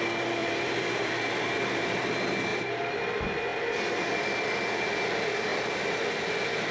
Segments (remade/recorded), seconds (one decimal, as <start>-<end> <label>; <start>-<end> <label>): 0.0-0.4 recorded; 0.4-2.1 remade; 2.1-2.5 recorded; 2.5-3.0 remade; 3.0-6.7 recorded